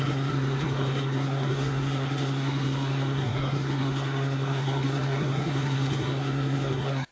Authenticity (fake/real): fake